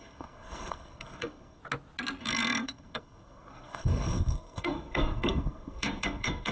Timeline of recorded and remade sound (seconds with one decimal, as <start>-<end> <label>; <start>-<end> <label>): 0.0-1.6 remade; 1.6-2.2 recorded; 2.2-6.5 remade